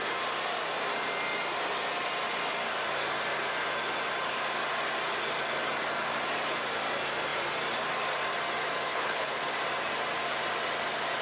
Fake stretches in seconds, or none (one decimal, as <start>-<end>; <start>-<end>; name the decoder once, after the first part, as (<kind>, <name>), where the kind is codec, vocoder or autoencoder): 8.9-9.4 (codec, HILCodec)